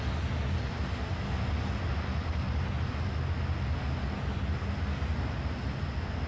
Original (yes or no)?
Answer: yes